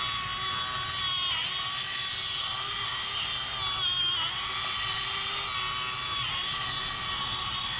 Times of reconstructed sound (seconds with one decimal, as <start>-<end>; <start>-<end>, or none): none